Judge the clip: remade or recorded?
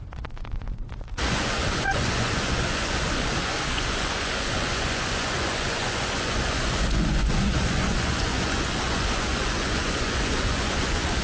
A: remade